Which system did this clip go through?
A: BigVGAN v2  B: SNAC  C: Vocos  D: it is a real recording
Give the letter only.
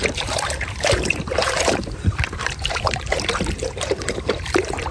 A